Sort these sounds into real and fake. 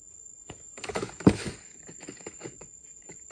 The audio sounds fake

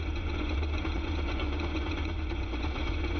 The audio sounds fake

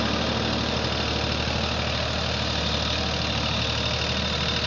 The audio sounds real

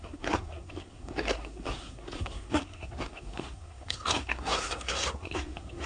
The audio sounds fake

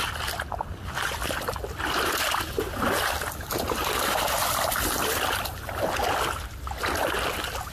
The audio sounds real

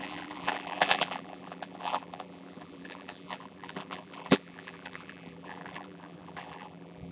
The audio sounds fake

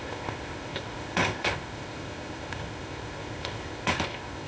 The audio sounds fake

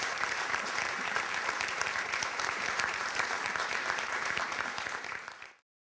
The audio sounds fake